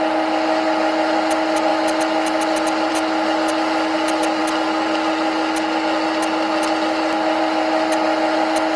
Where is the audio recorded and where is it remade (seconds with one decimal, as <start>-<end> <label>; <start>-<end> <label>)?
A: 0.0-8.8 recorded